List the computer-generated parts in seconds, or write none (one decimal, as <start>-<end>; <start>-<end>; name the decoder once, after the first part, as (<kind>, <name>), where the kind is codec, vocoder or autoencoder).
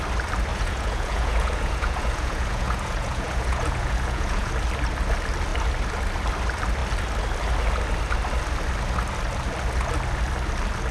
0.5-4.5 (vocoder, Vocos)